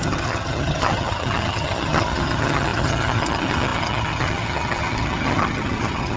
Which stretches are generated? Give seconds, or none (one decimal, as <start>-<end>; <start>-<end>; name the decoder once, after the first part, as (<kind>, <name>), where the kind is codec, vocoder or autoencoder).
0.0-6.2 (vocoder, HiFi-GAN)